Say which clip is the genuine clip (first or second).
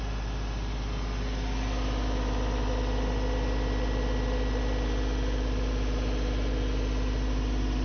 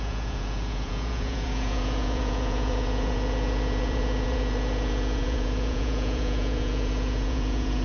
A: first